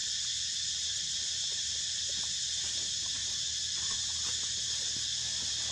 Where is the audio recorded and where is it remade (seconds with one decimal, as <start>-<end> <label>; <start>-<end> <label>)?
0.0-2.3 remade; 2.3-3.2 recorded; 3.2-4.0 remade; 4.0-5.7 recorded